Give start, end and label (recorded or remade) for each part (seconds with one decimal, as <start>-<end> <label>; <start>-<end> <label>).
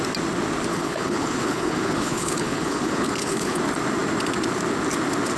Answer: 0.0-0.7 recorded; 0.7-3.6 remade; 3.6-5.4 recorded